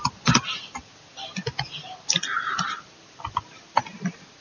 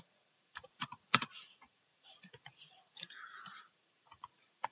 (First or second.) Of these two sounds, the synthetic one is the second